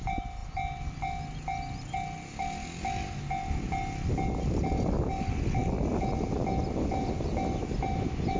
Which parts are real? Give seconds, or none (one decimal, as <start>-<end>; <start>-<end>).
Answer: 0.0-8.4